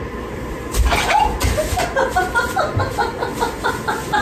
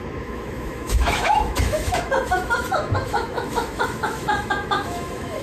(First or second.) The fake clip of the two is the second